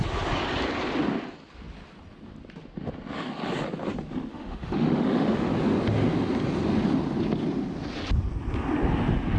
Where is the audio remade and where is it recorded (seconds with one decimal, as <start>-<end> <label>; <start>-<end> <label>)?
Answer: 0.0-4.3 recorded; 4.3-5.5 remade; 5.5-9.4 recorded